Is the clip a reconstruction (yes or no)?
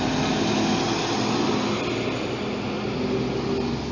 no